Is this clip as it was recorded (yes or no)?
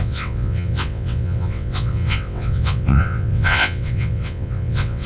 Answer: no